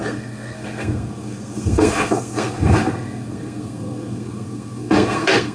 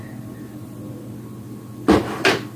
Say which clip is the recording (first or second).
second